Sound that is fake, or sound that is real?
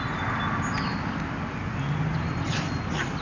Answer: real